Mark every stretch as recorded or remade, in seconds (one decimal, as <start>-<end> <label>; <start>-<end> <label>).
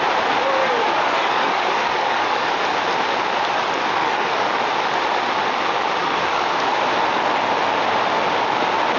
0.0-0.6 recorded; 0.6-2.5 remade; 2.5-4.0 recorded; 4.0-4.6 remade; 4.6-6.0 recorded; 6.0-6.5 remade; 6.5-9.0 recorded